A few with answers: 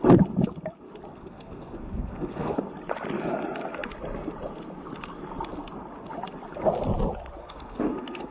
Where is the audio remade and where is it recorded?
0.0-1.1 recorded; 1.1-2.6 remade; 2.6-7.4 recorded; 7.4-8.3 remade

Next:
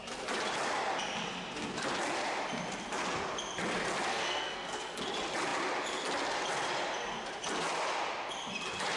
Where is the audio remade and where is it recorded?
0.0-4.1 recorded; 4.1-5.0 remade; 5.0-9.0 recorded

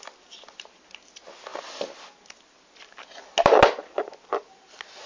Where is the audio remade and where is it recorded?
0.0-5.1 recorded

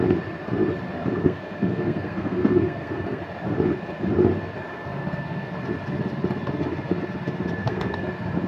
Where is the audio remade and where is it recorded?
0.0-1.2 recorded; 1.2-3.2 remade; 3.2-4.7 recorded; 4.7-5.5 remade; 5.5-7.6 recorded; 7.6-8.1 remade; 8.1-8.5 recorded

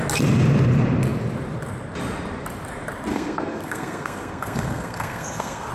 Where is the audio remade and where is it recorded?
0.0-3.1 recorded; 3.1-5.7 remade

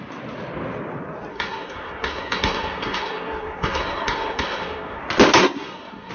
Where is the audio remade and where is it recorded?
0.0-1.3 recorded; 1.3-5.0 remade; 5.0-5.4 recorded; 5.4-6.1 remade